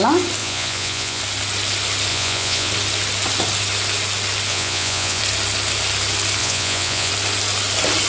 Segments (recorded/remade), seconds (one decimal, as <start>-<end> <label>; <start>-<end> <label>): 0.0-0.4 recorded; 0.4-1.2 remade; 1.2-2.1 recorded; 2.1-2.7 remade; 2.7-4.5 recorded; 4.5-5.2 remade; 5.2-6.4 recorded; 6.4-7.1 remade; 7.1-8.1 recorded